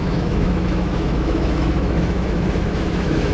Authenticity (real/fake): fake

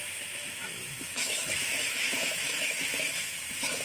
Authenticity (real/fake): fake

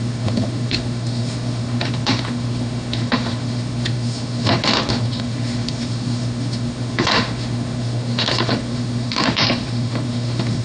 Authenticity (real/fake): fake